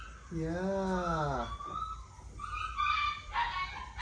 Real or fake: real